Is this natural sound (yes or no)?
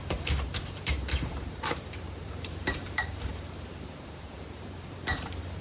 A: no